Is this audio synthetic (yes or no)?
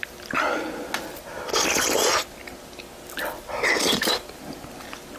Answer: no